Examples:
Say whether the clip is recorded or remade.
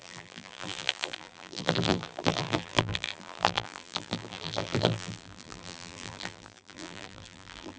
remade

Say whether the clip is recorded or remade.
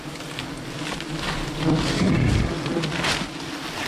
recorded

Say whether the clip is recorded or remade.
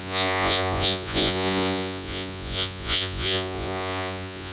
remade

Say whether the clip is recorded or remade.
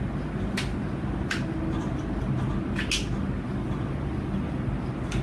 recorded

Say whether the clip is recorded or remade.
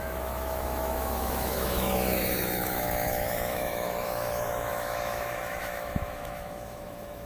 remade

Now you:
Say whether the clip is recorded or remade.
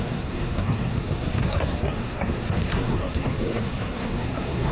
remade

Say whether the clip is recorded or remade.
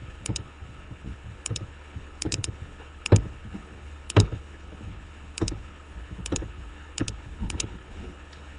remade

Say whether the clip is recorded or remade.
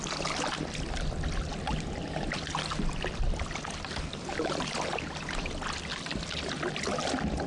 recorded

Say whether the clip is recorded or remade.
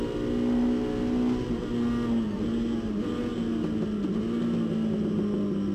recorded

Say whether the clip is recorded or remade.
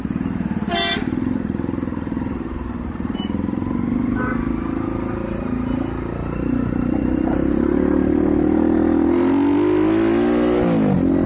recorded